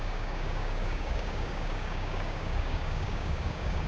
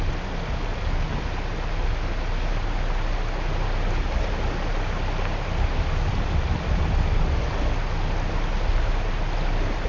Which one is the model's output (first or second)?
first